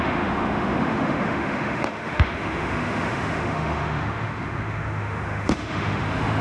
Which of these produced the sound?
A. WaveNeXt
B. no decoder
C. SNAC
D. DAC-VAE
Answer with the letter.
D